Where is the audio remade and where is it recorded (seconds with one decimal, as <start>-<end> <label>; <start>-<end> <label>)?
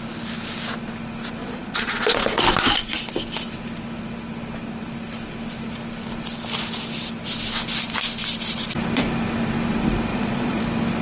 0.0-1.4 recorded; 1.4-2.4 remade; 2.4-10.1 recorded; 10.1-10.6 remade; 10.6-11.0 recorded